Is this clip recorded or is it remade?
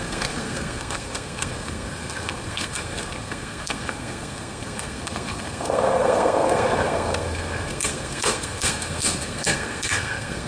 remade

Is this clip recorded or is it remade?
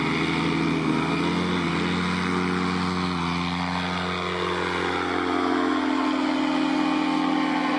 recorded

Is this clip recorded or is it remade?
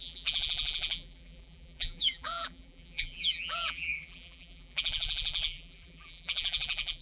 remade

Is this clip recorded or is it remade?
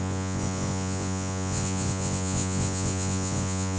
remade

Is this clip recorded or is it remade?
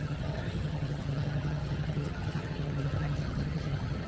remade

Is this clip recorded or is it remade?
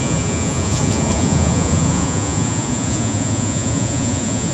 remade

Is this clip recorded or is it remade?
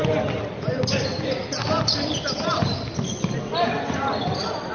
recorded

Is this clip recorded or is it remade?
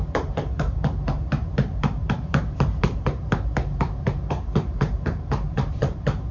remade